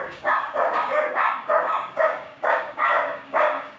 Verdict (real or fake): fake